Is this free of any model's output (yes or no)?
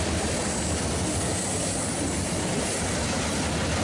yes